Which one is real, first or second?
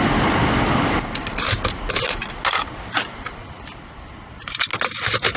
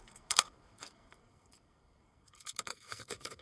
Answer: first